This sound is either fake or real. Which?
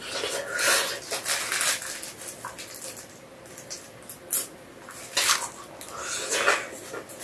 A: real